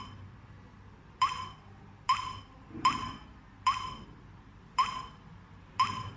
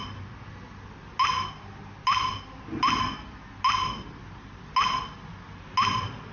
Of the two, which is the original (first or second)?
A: second